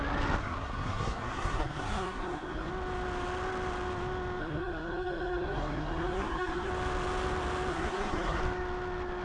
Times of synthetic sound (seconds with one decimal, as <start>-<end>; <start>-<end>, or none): 0.4-2.7; 4.4-6.7; 7.7-8.4